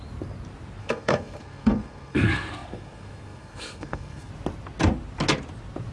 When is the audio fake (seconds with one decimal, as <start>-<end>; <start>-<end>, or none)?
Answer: 0.8-4.3